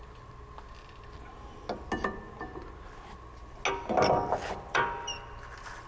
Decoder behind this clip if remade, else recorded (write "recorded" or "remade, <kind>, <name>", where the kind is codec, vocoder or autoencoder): recorded